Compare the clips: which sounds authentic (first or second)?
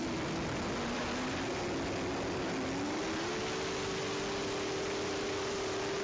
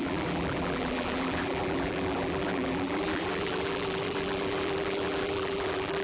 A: first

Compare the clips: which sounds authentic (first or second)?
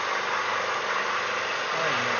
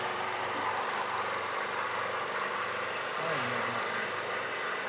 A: first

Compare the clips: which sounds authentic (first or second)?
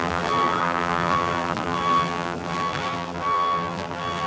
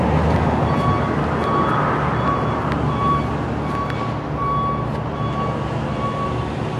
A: second